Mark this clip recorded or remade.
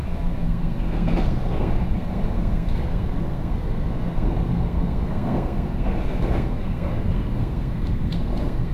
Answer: remade